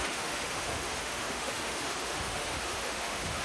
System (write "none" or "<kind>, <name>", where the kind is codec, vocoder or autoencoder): autoencoder, DAC-VAE